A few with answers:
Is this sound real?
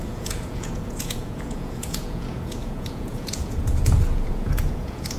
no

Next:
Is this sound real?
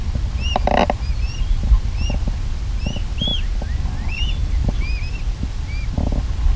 yes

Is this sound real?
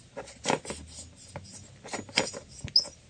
yes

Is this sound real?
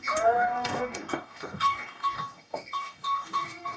no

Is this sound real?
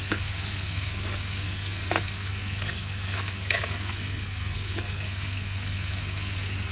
no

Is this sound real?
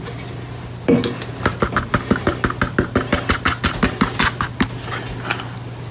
yes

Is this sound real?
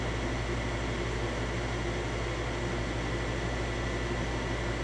yes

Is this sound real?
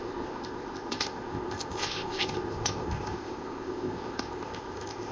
no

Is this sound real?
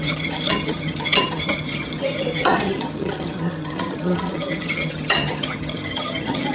no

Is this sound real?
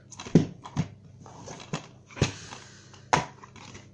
yes